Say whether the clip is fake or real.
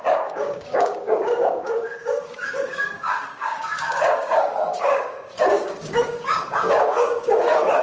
fake